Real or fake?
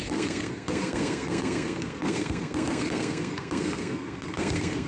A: fake